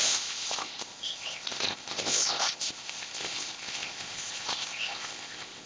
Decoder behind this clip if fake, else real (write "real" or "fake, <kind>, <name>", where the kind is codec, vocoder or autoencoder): fake, codec, ZipCodec